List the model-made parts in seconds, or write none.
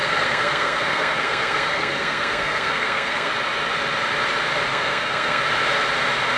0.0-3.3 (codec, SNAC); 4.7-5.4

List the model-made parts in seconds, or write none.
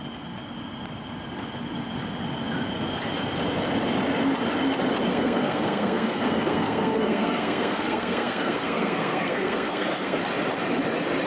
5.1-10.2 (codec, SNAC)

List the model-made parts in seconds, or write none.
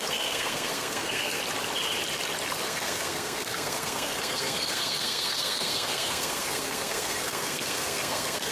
0.0-1.4 (codec, SNAC); 2.6-8.5